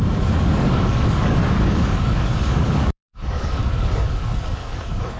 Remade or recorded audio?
remade